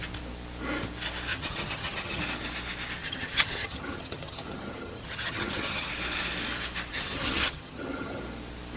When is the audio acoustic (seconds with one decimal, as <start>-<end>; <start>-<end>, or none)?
0.0-1.3; 2.2-3.0; 5.9-6.9; 8.2-8.8